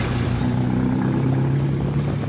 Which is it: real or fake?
real